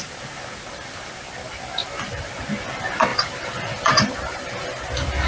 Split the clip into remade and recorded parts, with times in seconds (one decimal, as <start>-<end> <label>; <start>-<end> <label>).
0.0-1.8 recorded; 1.8-2.3 remade; 2.3-3.1 recorded; 3.1-4.8 remade; 4.8-5.3 recorded